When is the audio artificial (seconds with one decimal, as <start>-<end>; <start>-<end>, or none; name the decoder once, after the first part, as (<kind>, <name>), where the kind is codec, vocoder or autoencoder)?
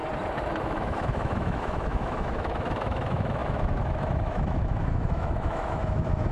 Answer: 0.6-6.3 (autoencoder, DAC-VAE)